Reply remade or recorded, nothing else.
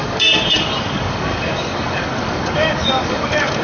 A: remade